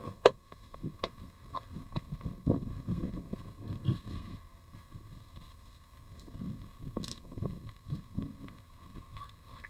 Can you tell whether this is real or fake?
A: fake